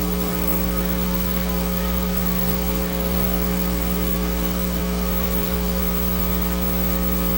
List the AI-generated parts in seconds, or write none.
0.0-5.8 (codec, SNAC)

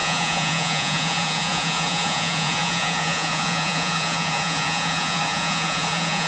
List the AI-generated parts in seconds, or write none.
0.0-6.3 (vocoder, Vocos)